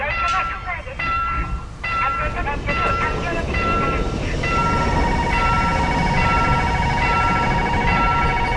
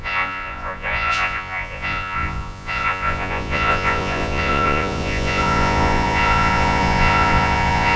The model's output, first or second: second